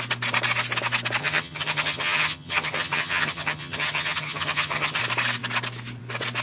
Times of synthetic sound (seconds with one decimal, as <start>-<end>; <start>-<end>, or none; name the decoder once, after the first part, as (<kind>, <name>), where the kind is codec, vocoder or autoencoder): 1.2-5.0 (vocoder, HiFi-GAN)